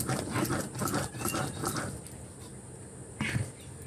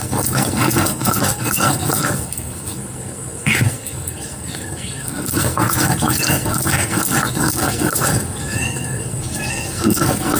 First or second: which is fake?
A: second